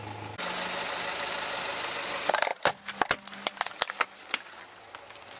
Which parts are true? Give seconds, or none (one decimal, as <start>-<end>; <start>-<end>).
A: 0.0-5.4